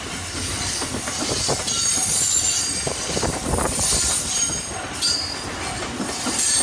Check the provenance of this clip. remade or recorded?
recorded